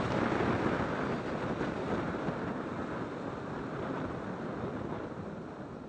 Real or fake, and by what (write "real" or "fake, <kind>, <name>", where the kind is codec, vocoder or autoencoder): real